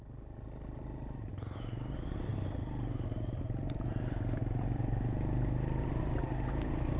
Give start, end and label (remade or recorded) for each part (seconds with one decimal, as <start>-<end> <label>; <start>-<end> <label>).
0.0-7.0 recorded